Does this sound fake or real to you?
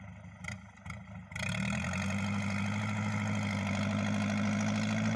real